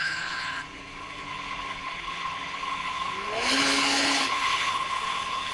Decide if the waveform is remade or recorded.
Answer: remade